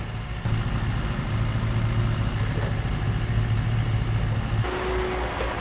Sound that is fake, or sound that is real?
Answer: real